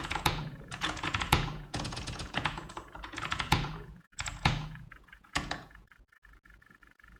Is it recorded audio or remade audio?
remade